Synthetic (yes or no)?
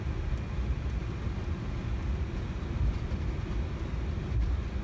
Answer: no